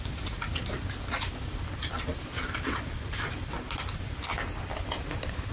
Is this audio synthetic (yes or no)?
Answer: no